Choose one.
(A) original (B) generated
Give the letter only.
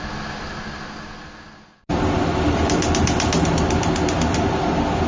A